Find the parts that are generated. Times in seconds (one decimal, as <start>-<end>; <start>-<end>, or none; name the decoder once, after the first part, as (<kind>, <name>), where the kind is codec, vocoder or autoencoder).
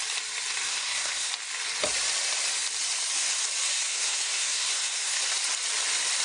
0.7-1.3 (codec, SNAC); 3.7-5.2